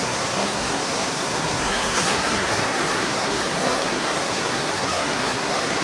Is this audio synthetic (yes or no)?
yes